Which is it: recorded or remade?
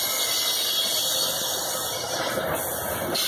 recorded